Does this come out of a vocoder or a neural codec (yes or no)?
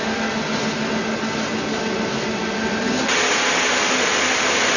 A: no